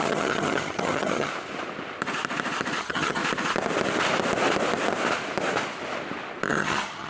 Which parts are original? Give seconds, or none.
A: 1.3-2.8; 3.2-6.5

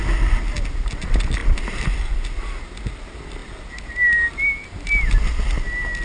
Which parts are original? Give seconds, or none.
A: 0.0-6.0

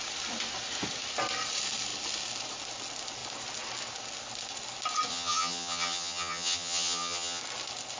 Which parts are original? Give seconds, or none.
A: 0.0-5.1; 7.4-8.0

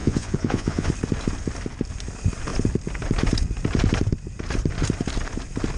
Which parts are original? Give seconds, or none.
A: 0.9-5.8